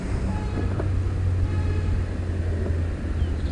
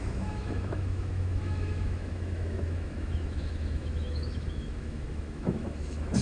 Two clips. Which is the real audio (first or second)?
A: first